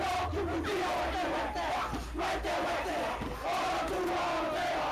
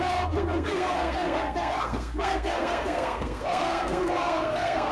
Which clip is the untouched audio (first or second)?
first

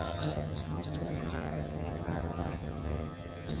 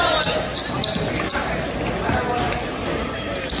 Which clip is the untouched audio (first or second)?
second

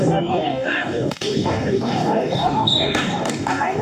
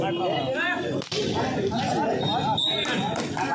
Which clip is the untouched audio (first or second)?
second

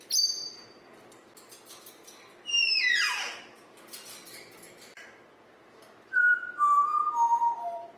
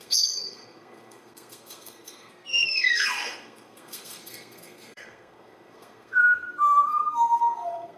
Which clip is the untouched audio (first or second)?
first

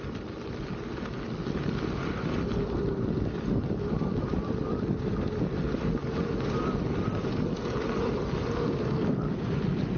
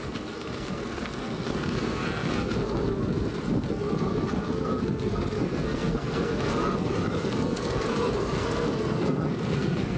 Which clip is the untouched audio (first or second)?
first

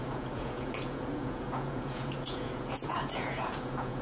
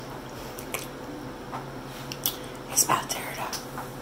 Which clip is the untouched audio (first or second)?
second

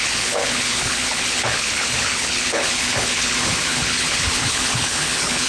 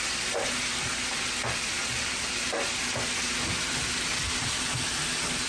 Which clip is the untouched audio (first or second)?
second